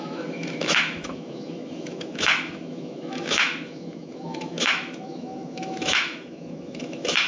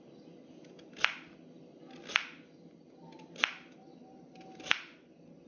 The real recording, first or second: second